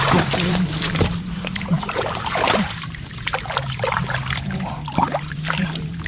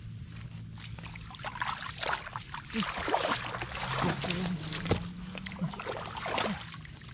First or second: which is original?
second